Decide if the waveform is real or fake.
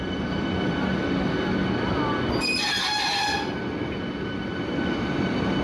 real